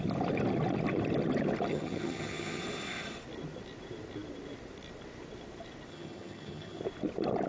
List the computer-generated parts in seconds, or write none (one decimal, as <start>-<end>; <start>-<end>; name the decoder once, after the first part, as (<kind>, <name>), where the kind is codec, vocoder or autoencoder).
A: 1.7-2.6 (vocoder, HiFi-GAN); 5.9-6.8